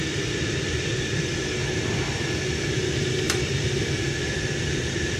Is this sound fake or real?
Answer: fake